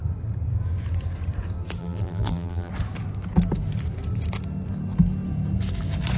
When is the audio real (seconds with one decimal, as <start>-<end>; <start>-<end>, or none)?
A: 0.0-1.8; 2.7-6.2